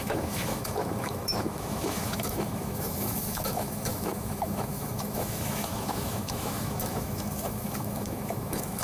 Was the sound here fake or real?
fake